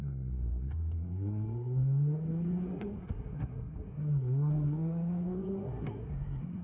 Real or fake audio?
fake